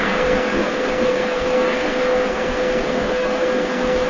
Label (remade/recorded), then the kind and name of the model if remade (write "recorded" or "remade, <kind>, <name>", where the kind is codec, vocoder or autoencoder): remade, codec, SNAC